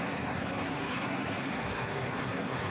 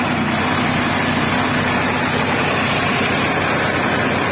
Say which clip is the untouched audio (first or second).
second